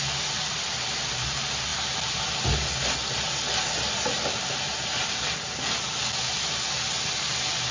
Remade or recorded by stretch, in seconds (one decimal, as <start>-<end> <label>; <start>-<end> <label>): 0.0-7.7 recorded